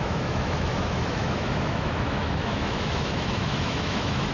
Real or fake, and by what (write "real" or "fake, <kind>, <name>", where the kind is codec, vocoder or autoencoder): fake, autoencoder, DAC-VAE